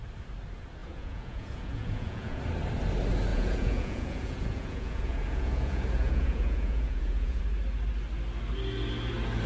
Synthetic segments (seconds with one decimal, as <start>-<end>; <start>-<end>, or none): 0.8-2.4; 3.3-7.4